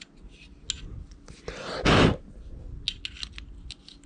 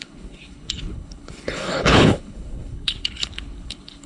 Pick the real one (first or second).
first